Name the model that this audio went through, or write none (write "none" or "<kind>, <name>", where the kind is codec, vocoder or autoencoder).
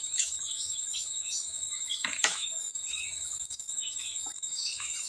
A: autoencoder, DAC-VAE